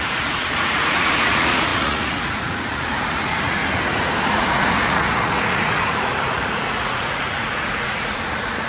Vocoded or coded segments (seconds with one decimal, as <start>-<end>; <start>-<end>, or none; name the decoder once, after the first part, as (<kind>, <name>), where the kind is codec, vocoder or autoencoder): 0.0-3.6 (vocoder, Vocos); 4.2-8.7